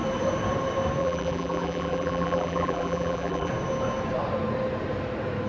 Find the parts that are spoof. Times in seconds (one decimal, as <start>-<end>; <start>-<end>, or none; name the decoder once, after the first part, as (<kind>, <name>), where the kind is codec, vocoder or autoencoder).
1.0-3.5 (vocoder, BigVGAN v2)